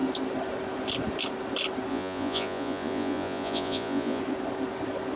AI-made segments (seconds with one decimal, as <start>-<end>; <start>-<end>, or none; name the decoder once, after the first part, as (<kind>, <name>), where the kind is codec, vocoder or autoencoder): 1.9-4.2 (vocoder, Vocos)